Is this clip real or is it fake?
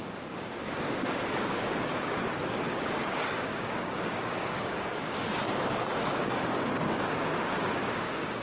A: fake